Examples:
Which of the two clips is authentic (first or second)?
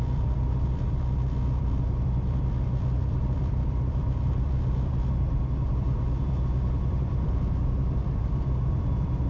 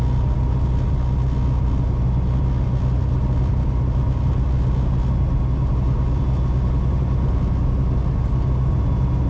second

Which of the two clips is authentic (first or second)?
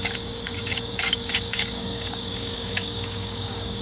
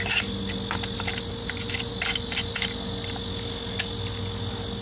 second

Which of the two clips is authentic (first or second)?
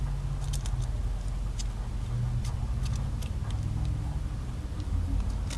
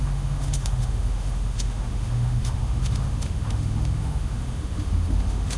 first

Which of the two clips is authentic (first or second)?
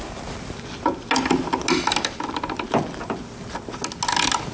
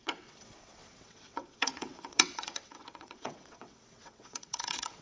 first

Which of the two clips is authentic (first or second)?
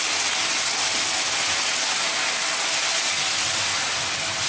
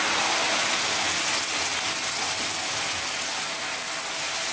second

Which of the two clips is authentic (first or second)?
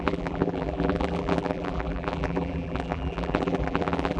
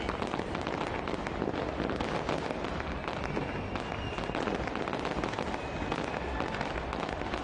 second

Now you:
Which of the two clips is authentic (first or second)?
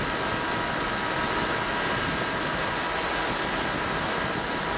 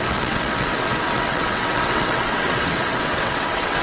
first